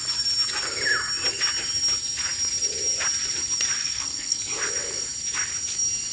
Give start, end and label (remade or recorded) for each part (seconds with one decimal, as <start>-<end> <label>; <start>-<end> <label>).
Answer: 0.0-3.8 recorded; 3.8-4.4 remade; 4.4-6.1 recorded